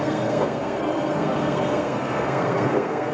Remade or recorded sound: remade